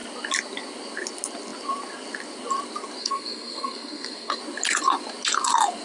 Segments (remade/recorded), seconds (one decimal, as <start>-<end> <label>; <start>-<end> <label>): 0.0-3.0 recorded; 3.0-4.4 remade; 4.4-5.8 recorded